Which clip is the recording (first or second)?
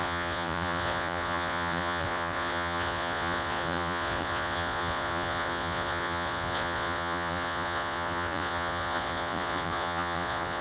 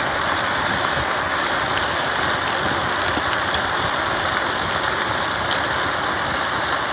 second